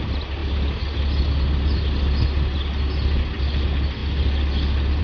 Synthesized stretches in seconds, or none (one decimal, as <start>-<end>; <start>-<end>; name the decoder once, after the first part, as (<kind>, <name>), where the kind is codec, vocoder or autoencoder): none